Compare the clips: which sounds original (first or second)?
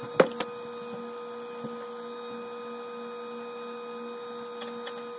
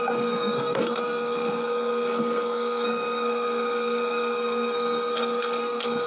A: first